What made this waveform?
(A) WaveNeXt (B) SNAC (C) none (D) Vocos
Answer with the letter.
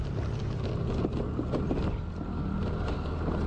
C